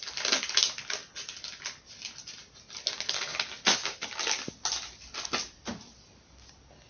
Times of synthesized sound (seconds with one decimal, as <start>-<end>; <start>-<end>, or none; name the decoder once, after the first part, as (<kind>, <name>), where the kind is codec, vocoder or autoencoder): none